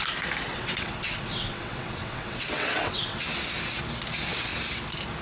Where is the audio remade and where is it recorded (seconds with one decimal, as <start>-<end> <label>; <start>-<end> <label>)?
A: 0.0-0.5 recorded; 0.5-3.2 remade; 3.2-5.2 recorded